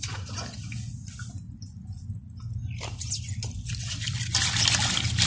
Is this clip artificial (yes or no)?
no